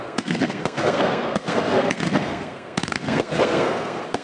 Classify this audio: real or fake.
fake